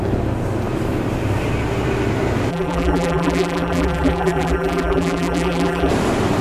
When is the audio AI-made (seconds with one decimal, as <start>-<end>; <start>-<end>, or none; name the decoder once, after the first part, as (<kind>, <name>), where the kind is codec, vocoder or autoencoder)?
2.5-5.9 (vocoder, BigVGAN v2)